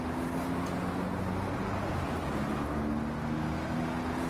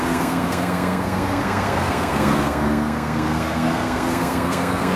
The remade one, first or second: second